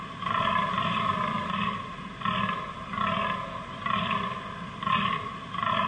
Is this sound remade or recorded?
recorded